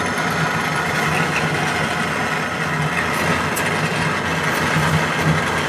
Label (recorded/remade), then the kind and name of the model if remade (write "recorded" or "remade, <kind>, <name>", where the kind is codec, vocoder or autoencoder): recorded